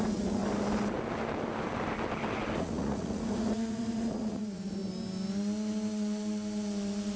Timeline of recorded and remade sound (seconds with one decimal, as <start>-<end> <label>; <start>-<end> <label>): 0.0-0.4 remade; 0.4-2.6 recorded; 2.6-4.8 remade; 4.8-7.2 recorded